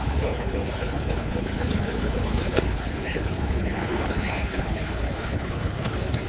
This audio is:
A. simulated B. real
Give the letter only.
A